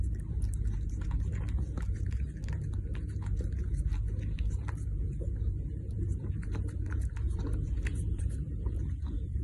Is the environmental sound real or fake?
fake